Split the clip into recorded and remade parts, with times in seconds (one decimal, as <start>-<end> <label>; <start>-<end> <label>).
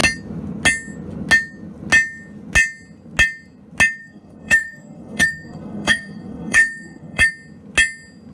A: 0.0-4.0 recorded; 4.0-7.3 remade; 7.3-8.3 recorded